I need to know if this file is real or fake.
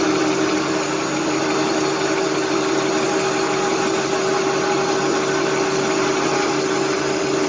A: real